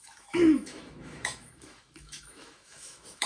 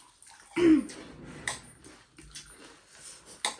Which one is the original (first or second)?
second